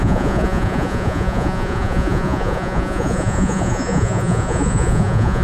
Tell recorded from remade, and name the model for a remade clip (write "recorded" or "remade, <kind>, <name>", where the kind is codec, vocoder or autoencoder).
remade, vocoder, Vocos